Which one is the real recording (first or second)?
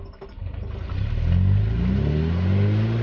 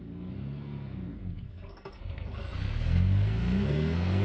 first